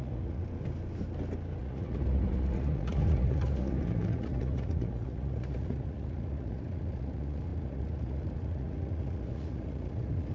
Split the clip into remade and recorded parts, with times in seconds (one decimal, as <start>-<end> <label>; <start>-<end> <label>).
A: 0.0-0.4 remade; 0.4-1.6 recorded; 1.6-10.3 remade